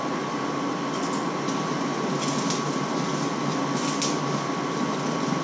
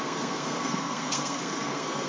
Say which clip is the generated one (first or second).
second